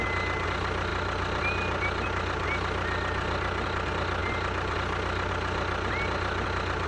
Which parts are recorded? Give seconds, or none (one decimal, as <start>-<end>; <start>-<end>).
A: 0.0-6.9